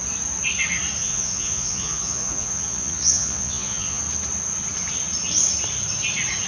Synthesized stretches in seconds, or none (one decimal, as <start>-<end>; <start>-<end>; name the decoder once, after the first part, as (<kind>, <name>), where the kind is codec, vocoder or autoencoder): 1.0-4.0 (vocoder, Vocos)